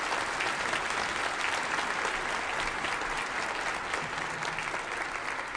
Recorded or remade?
recorded